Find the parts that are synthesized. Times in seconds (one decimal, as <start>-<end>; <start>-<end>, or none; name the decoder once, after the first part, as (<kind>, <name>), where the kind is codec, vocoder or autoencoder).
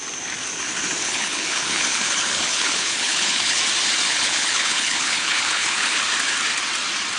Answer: 1.0-3.6 (codec, HILCodec); 4.1-6.0